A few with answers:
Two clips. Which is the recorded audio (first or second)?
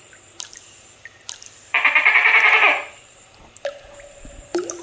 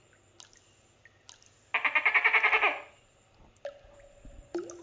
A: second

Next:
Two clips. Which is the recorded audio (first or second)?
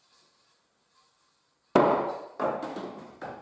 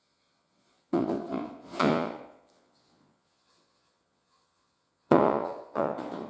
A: first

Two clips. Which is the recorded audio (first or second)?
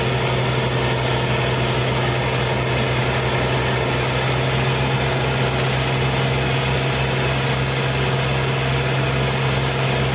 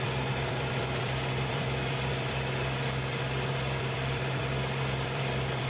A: first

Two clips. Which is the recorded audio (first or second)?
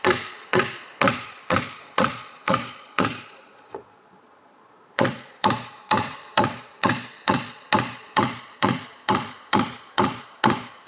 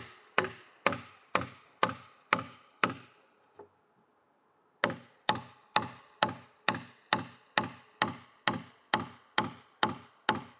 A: second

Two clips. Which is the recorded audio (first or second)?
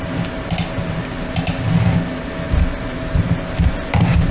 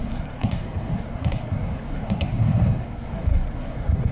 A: first